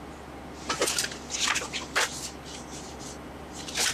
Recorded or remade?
remade